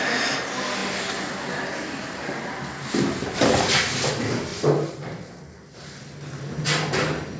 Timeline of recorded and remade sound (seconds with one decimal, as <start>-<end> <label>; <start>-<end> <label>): 0.0-7.4 recorded